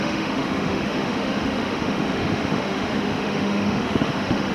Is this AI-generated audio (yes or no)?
yes